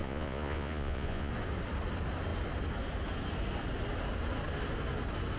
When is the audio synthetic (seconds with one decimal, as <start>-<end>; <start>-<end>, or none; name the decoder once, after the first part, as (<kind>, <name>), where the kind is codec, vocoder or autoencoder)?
0.0-1.3 (vocoder, Vocos)